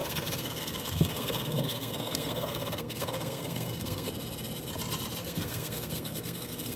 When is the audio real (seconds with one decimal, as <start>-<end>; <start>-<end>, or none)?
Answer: 4.1-5.2